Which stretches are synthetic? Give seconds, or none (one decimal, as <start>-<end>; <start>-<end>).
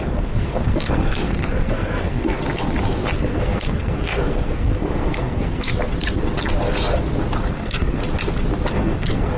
0.0-2.4; 3.2-5.7; 7.5-8.0; 8.7-9.4